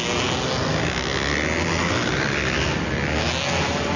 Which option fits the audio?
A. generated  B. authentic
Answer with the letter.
B